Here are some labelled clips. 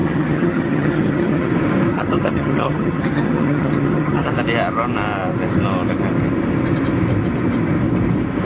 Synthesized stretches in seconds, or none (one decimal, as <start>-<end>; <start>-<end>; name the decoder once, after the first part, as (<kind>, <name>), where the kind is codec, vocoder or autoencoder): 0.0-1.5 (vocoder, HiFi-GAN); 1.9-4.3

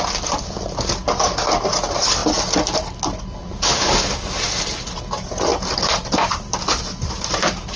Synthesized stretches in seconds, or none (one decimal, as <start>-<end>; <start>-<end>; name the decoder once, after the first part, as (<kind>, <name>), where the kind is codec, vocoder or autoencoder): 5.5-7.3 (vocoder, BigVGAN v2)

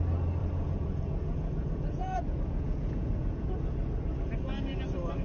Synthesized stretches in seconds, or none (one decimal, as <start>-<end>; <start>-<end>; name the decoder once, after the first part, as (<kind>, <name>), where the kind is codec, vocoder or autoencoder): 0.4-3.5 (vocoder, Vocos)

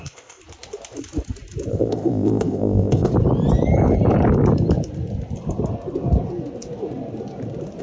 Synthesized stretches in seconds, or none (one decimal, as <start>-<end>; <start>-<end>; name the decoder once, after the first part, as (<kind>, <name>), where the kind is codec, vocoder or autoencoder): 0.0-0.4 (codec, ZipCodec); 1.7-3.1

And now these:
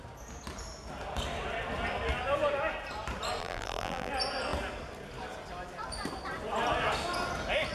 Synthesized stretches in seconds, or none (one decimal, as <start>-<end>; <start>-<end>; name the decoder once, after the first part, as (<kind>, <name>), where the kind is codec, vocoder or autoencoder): 3.4-4.1 (vocoder, BigVGAN v2)

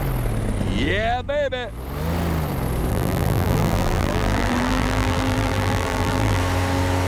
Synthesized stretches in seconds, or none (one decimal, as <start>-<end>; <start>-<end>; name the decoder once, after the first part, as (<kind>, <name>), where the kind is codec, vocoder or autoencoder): 2.9-6.4 (vocoder, BigVGAN v2)